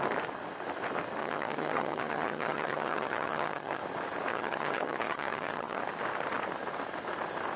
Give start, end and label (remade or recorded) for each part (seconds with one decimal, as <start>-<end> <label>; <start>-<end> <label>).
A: 0.0-1.2 recorded; 1.2-3.8 remade; 3.8-4.3 recorded; 4.3-5.8 remade; 5.8-7.6 recorded